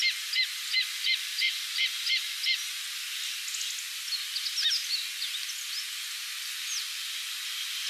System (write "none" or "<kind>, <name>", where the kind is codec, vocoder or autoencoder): none